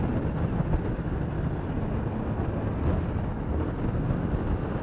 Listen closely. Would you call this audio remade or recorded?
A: recorded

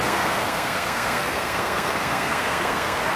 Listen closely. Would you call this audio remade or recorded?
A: remade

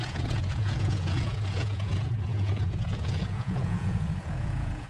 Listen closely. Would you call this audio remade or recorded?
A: remade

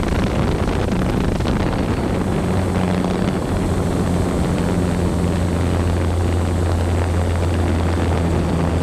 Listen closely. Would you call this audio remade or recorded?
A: recorded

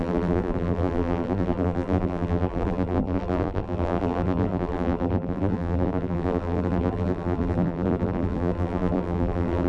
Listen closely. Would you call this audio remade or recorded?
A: remade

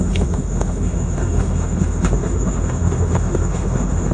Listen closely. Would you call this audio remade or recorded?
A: remade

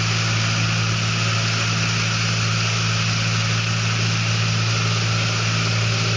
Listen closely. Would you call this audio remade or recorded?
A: recorded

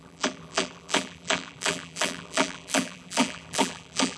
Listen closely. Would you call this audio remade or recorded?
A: remade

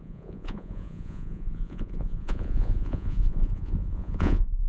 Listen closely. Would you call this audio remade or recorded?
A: remade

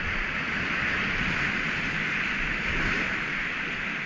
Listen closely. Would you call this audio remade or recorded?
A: recorded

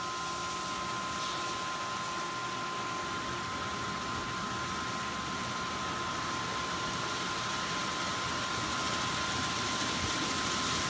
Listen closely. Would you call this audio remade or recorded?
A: recorded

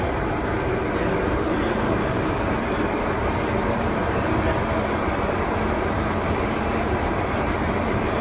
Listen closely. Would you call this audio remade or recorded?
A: remade